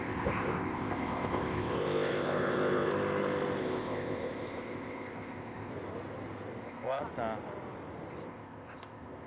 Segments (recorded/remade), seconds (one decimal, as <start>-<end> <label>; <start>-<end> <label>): 0.0-2.9 remade; 2.9-3.6 recorded; 3.6-5.7 remade; 5.7-6.6 recorded; 6.6-7.0 remade; 7.0-8.3 recorded; 8.3-9.3 remade